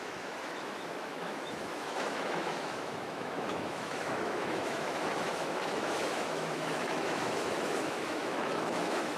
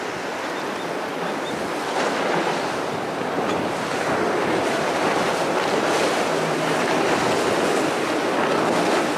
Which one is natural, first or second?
second